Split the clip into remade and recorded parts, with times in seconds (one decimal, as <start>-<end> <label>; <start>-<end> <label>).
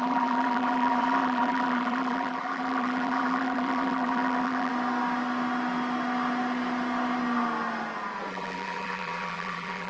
0.0-4.7 remade; 4.7-8.3 recorded; 8.3-9.9 remade